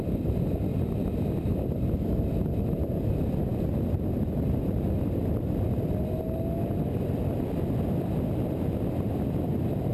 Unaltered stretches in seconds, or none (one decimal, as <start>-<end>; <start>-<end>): 0.0-9.9